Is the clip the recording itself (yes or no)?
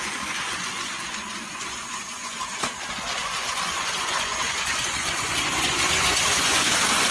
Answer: no